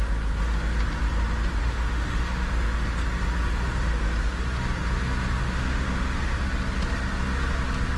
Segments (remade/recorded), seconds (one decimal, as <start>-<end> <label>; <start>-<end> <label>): 0.0-1.6 recorded; 1.6-2.5 remade; 2.5-5.4 recorded; 5.4-6.4 remade; 6.4-8.0 recorded

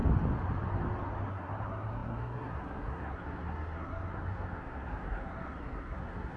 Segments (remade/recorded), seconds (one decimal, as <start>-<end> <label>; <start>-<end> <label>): 0.0-1.3 recorded; 1.3-6.4 remade

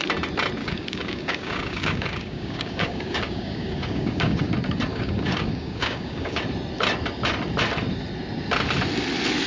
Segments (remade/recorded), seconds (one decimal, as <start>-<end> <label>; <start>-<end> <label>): 0.0-0.6 recorded; 0.6-4.5 remade; 4.5-4.9 recorded; 4.9-6.4 remade; 6.4-9.5 recorded

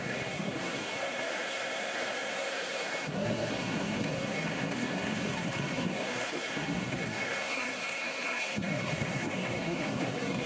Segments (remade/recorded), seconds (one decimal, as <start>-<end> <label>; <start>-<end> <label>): 0.0-10.5 remade

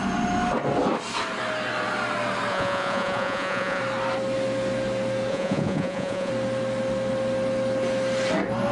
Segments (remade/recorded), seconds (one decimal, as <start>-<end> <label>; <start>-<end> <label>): 0.0-2.5 recorded; 2.5-3.8 remade; 3.8-5.3 recorded; 5.3-6.3 remade; 6.3-8.7 recorded

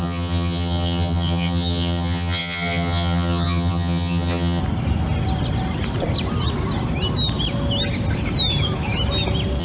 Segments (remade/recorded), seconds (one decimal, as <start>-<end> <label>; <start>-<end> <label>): 0.0-4.6 remade; 4.6-9.6 recorded

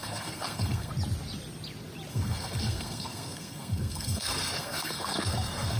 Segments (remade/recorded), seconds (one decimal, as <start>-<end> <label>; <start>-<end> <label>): 0.0-0.9 remade; 0.9-2.1 recorded; 2.1-5.8 remade

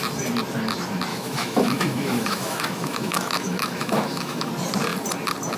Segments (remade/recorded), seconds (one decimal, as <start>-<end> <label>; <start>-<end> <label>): 0.0-1.1 recorded; 1.1-4.5 remade; 4.5-5.6 recorded